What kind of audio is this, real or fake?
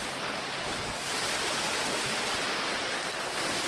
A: real